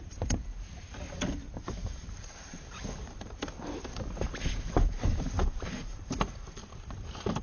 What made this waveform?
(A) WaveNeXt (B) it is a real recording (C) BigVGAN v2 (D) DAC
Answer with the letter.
C